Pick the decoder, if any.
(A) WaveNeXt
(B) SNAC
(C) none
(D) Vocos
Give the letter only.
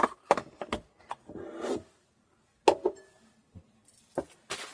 C